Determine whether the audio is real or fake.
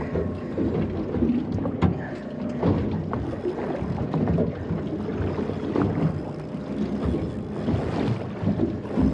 real